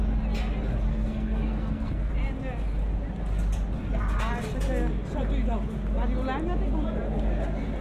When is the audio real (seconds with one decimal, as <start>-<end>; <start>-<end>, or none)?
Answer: 0.0-0.9; 2.1-7.8